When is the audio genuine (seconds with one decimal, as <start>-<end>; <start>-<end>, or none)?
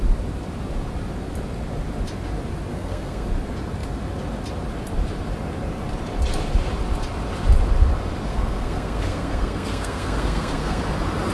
0.0-2.7; 3.3-8.3; 10.8-11.3